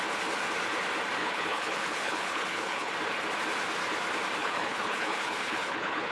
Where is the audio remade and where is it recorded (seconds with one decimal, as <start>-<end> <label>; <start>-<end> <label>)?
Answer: 0.0-1.2 recorded; 1.2-2.9 remade; 2.9-4.4 recorded; 4.4-6.1 remade